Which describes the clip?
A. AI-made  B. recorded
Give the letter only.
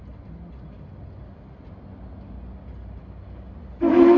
B